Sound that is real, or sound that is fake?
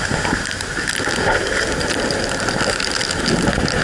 fake